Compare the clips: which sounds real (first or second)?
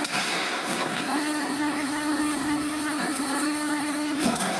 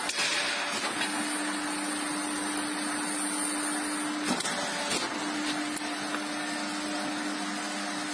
second